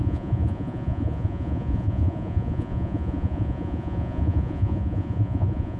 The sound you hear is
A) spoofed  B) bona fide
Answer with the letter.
A